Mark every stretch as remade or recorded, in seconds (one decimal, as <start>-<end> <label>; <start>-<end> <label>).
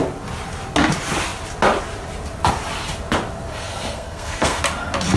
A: 0.0-3.5 recorded; 3.5-4.6 remade; 4.6-5.2 recorded